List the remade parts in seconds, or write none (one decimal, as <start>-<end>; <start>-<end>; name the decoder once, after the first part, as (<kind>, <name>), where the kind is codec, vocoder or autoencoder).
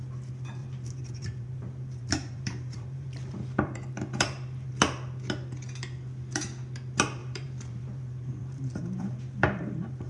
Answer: 0.6-4.7 (vocoder, BigVGAN v2); 7.2-10.1